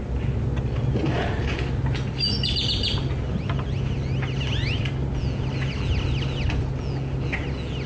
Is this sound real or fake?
real